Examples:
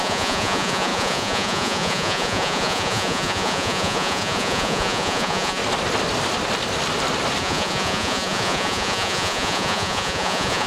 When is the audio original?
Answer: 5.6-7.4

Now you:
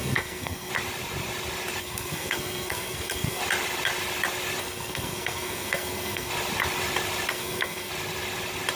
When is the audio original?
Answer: 0.7-1.8; 3.4-4.6; 6.3-7.3; 7.9-8.8

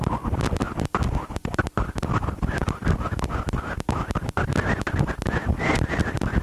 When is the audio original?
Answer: 0.0-6.4

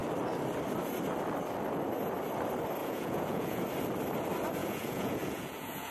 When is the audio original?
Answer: 0.0-2.8; 3.6-4.6

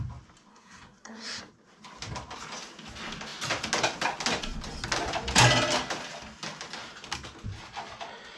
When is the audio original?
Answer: 0.0-0.5; 1.4-8.4